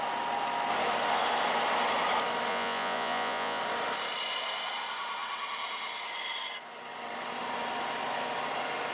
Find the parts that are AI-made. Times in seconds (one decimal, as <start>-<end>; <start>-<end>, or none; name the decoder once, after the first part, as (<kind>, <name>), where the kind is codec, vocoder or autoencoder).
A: 2.5-3.6 (vocoder, Vocos)